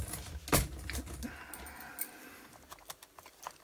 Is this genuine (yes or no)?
yes